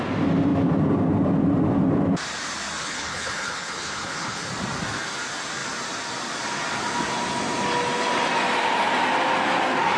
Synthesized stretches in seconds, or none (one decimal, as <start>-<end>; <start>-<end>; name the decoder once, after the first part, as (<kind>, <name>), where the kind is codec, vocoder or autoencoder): 2.8-4.5 (codec, HILCodec)